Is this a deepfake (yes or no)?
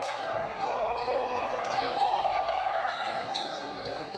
yes